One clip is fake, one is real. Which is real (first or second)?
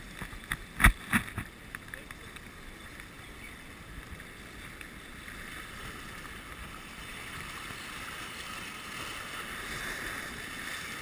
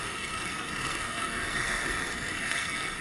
first